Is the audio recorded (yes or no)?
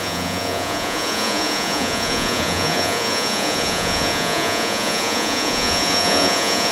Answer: no